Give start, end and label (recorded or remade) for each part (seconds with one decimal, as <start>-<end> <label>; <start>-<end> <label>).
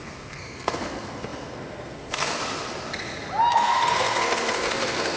0.0-2.4 remade; 2.4-3.5 recorded; 3.5-5.2 remade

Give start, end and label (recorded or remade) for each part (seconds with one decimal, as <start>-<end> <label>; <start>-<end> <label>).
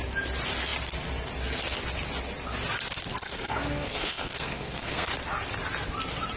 0.0-3.2 recorded; 3.2-5.1 remade; 5.1-6.4 recorded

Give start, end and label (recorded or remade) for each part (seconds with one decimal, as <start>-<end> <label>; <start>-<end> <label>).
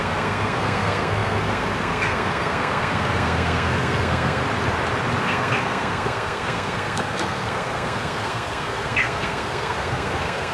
0.0-4.4 remade; 4.4-5.2 recorded; 5.2-10.5 remade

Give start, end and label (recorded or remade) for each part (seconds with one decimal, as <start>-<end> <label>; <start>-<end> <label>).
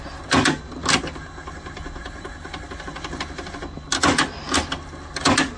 0.0-5.6 recorded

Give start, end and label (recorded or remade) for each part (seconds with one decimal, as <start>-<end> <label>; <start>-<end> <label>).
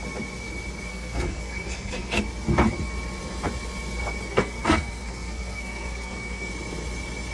0.0-0.9 recorded; 0.9-2.2 remade; 2.2-4.3 recorded; 4.3-6.5 remade; 6.5-7.3 recorded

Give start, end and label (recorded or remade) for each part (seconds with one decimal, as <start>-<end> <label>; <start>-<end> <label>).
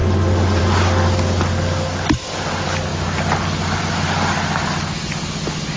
0.0-5.8 recorded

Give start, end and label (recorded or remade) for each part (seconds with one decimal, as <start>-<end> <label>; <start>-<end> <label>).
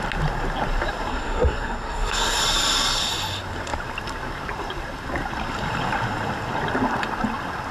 0.0-1.1 recorded; 1.1-2.4 remade; 2.4-7.7 recorded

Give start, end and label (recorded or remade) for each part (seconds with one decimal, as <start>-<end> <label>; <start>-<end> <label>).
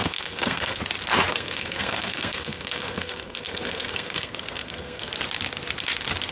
0.0-0.8 remade; 0.8-1.3 recorded; 1.3-5.1 remade; 5.1-6.3 recorded